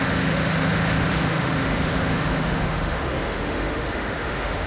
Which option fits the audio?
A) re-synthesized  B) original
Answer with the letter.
A